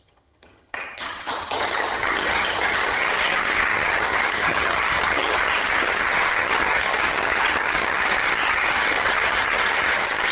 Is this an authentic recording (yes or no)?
no